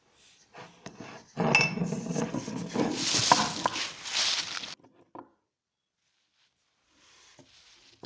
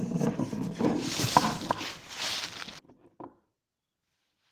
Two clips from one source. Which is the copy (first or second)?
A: second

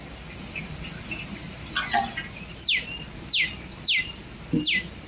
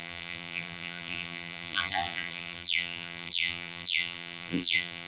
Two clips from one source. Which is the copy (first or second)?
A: second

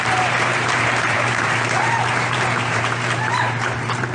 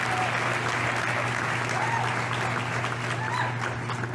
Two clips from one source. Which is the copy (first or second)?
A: first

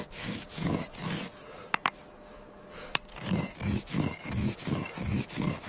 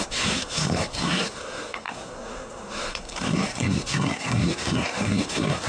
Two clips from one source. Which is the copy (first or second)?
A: second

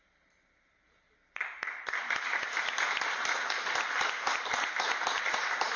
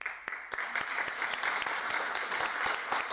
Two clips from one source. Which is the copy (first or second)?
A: first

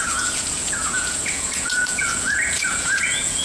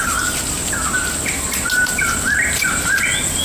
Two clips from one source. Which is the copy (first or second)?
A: first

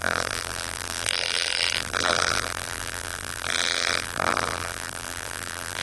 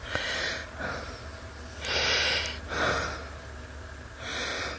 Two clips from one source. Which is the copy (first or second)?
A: first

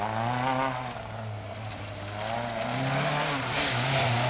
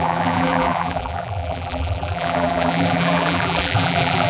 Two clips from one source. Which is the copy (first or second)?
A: second